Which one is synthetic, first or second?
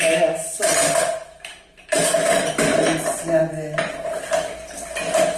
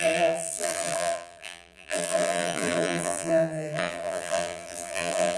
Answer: second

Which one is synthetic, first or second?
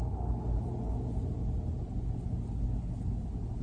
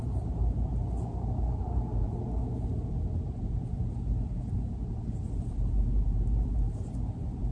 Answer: second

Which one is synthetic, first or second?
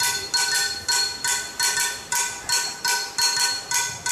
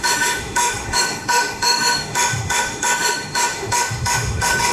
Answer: second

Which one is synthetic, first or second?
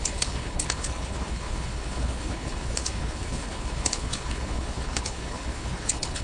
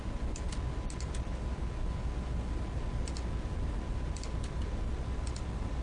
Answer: first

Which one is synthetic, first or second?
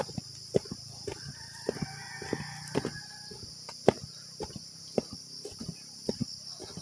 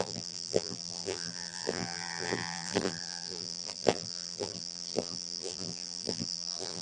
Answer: second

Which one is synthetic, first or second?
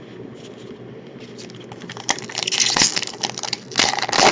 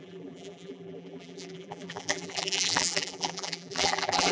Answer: second